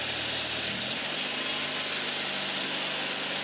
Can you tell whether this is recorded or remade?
recorded